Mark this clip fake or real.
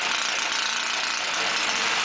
real